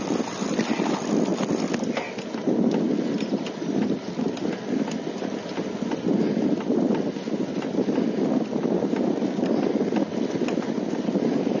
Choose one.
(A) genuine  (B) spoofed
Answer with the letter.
A